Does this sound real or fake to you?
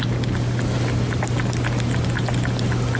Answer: real